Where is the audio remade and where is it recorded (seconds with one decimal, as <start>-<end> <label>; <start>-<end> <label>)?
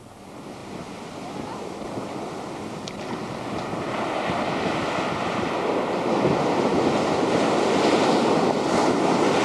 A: 0.0-9.4 recorded